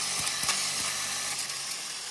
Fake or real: real